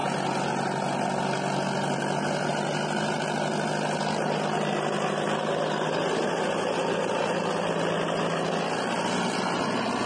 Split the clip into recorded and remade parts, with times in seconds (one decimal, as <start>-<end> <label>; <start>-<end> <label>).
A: 0.0-10.1 recorded